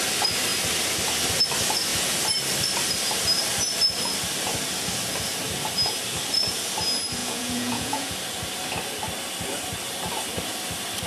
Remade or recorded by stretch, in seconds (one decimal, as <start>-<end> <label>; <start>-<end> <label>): 0.0-7.2 recorded; 7.2-8.1 remade; 8.1-11.1 recorded